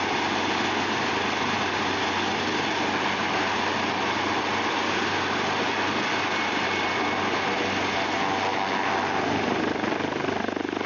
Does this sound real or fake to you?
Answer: real